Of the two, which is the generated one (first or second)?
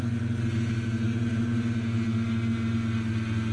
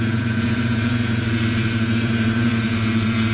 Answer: second